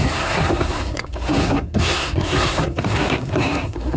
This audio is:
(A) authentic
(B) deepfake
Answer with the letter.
B